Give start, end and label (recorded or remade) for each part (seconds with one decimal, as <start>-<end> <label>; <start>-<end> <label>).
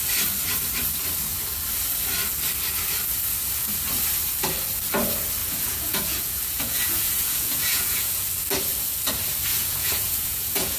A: 0.0-5.4 recorded; 5.4-8.3 remade; 8.3-9.5 recorded; 9.5-10.8 remade